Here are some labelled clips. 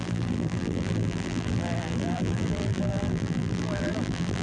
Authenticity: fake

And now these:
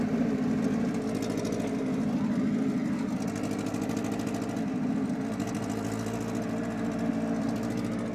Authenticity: real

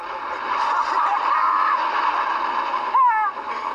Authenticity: real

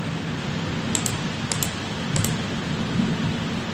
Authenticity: real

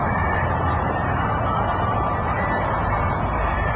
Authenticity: fake